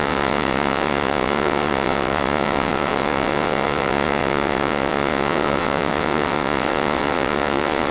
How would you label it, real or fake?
fake